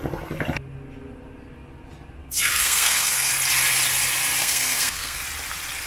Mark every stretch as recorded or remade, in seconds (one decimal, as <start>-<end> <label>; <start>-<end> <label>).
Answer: 0.0-2.2 recorded; 2.2-3.3 remade; 3.3-4.4 recorded; 4.4-5.2 remade; 5.2-5.9 recorded